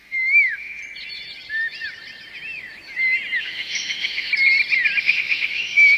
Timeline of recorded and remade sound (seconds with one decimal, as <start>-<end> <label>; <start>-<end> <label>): 0.0-0.8 remade; 0.8-3.4 recorded; 3.4-4.3 remade; 4.3-5.0 recorded; 5.0-6.0 remade